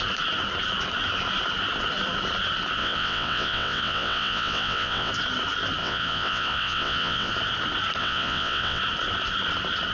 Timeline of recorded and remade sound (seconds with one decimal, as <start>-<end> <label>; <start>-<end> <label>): 0.0-2.8 recorded; 2.8-5.1 remade; 5.1-5.8 recorded; 5.8-7.3 remade; 7.3-8.0 recorded; 8.0-8.8 remade; 8.8-9.9 recorded